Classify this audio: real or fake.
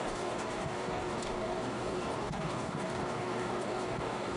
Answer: fake